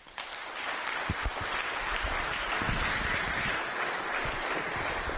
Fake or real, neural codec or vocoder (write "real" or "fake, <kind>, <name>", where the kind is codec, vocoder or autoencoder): fake, vocoder, BigVGAN v2